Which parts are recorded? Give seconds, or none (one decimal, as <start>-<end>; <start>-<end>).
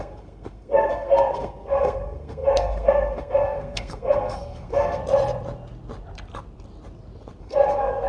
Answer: 5.0-7.4